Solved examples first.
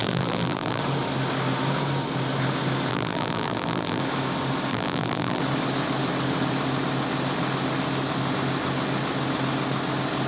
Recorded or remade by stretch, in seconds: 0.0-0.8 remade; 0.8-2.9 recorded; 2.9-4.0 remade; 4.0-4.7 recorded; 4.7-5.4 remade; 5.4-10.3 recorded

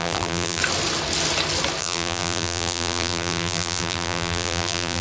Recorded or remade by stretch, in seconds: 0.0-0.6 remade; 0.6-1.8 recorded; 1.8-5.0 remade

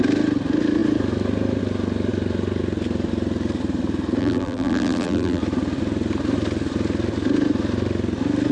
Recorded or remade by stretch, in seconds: 0.0-4.2 recorded; 4.2-5.4 remade; 5.4-8.5 recorded